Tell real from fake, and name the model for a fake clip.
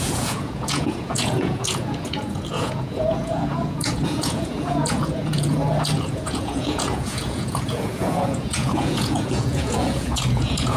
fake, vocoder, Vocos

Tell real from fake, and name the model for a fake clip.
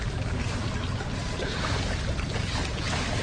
real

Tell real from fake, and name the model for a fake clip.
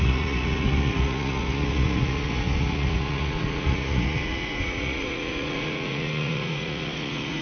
fake, vocoder, Vocos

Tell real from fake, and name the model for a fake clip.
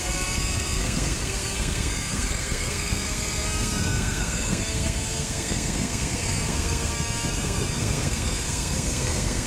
fake, codec, SNAC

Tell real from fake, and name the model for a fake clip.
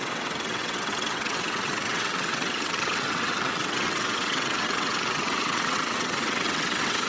fake, vocoder, WaveNeXt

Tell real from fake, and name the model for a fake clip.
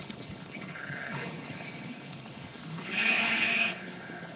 fake, codec, HILCodec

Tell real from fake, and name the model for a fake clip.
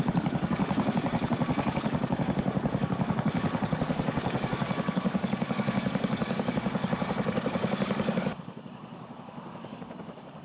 fake, codec, DAC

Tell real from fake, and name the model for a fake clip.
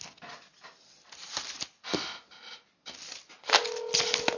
real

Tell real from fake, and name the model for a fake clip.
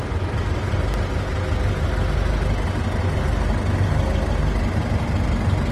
real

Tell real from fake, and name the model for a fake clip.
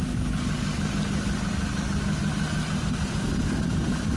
real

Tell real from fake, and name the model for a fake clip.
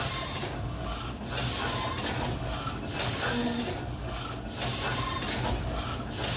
real